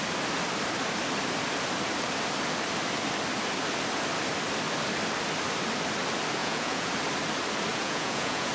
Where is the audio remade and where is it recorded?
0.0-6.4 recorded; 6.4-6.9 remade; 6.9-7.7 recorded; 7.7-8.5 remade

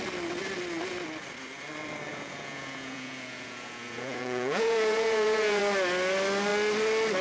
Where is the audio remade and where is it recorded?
0.0-2.1 recorded; 2.1-5.6 remade; 5.6-7.2 recorded

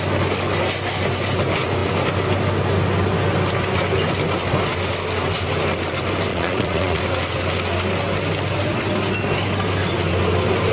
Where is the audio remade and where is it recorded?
0.0-6.3 recorded; 6.3-7.0 remade; 7.0-10.7 recorded

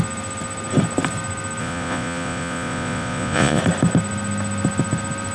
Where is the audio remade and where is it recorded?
0.0-1.6 recorded; 1.6-3.6 remade; 3.6-5.3 recorded

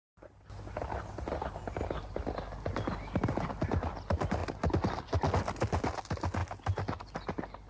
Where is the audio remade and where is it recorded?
0.0-7.7 recorded

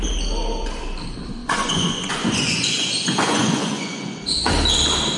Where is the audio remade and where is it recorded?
0.0-1.4 recorded; 1.4-4.5 remade; 4.5-5.2 recorded

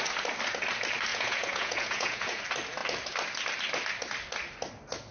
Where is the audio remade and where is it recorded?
0.0-1.1 recorded; 1.1-2.4 remade; 2.4-5.1 recorded

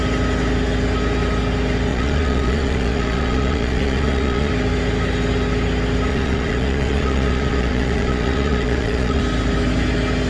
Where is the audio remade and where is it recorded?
0.0-1.9 recorded; 1.9-4.5 remade; 4.5-6.1 recorded; 6.1-9.2 remade; 9.2-10.3 recorded